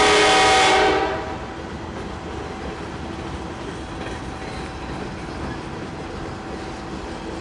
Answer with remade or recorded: recorded